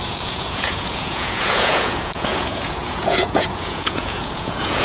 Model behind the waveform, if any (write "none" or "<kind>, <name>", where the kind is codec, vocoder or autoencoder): vocoder, Vocos